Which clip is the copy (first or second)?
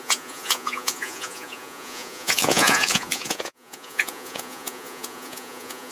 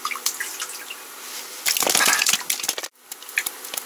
first